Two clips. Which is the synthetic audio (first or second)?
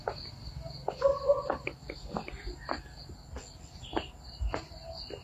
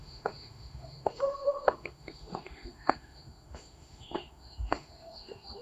second